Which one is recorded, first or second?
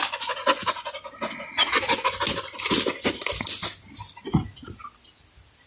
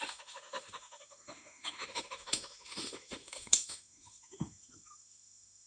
first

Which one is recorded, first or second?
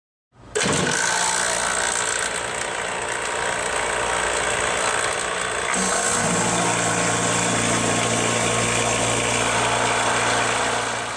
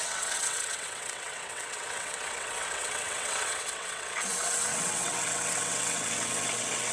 first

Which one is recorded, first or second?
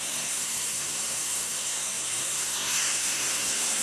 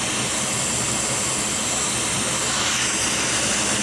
second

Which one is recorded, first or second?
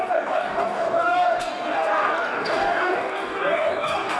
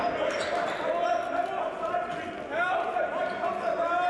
second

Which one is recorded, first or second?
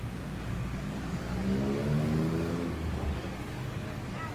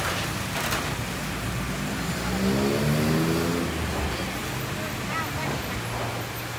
second